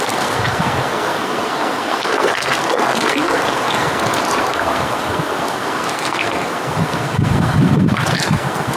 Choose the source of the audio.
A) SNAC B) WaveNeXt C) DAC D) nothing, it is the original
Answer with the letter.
A